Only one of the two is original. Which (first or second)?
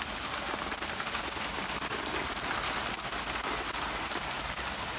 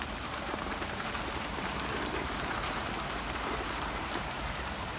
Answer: first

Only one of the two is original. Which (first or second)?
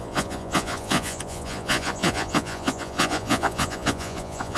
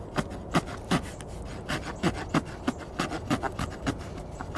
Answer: second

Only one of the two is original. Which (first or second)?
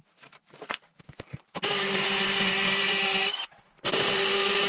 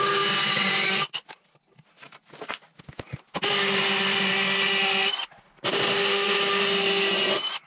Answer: second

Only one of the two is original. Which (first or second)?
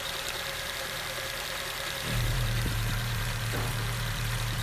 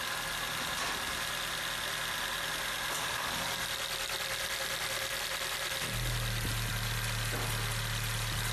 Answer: second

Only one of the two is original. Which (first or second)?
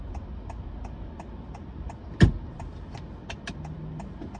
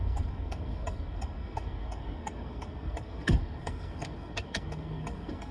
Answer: first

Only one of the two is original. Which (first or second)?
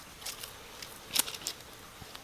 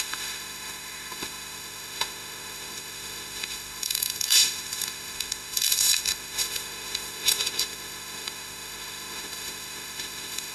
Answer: first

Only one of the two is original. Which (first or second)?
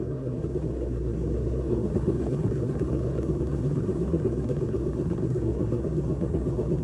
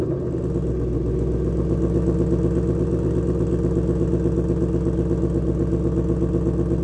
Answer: second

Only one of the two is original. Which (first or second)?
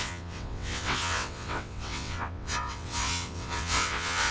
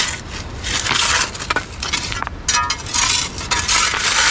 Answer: second